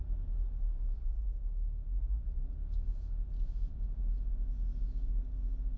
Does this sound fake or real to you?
real